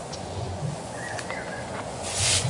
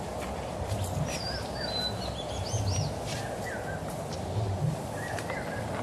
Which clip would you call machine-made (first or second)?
first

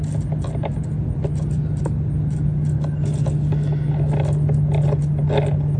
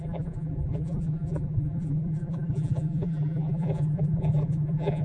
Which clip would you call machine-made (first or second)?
second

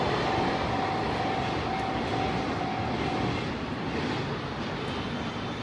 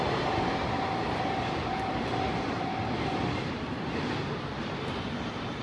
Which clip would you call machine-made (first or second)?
second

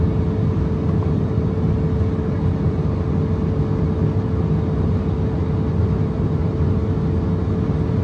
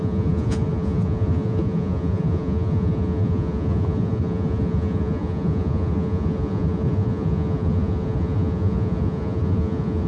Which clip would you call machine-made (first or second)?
second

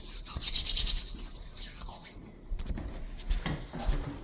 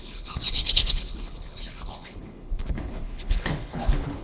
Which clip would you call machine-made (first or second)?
second